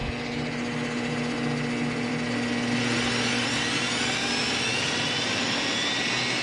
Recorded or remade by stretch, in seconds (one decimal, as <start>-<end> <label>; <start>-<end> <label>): 0.0-6.4 recorded